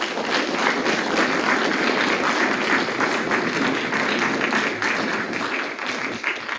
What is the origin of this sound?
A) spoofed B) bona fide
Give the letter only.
B